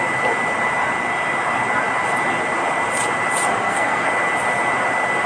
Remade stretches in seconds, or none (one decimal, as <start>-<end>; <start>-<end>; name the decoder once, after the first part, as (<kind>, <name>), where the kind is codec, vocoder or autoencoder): 3.5-4.1 (codec, SNAC)